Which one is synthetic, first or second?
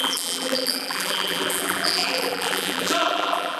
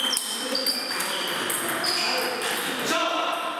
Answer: first